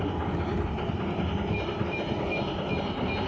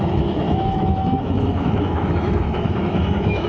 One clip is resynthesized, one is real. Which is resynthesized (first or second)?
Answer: second